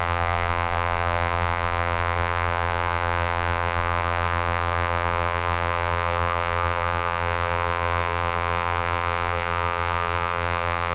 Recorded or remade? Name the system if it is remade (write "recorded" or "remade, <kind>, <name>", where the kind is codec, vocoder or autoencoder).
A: remade, vocoder, BigVGAN v2